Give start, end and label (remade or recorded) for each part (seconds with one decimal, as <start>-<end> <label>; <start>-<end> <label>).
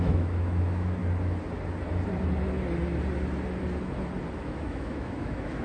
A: 0.0-1.0 remade; 1.0-4.4 recorded; 4.4-5.6 remade